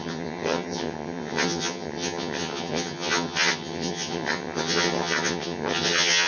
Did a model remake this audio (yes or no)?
yes